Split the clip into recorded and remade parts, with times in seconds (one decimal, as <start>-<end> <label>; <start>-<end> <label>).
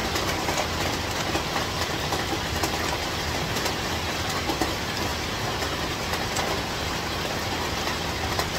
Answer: 0.0-8.6 recorded